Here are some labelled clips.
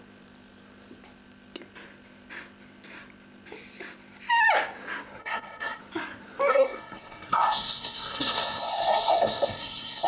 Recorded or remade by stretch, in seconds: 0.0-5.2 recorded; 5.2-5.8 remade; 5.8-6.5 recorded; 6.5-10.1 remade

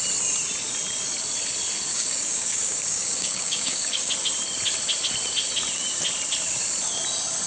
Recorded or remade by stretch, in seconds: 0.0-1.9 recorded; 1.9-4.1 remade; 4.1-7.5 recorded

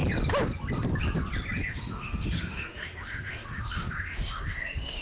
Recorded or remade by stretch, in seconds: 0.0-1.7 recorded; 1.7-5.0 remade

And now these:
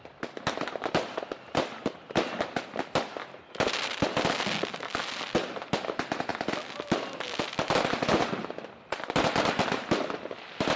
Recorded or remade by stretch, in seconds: 0.0-10.8 recorded